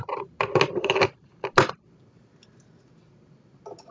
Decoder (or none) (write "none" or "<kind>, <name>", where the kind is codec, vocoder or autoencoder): none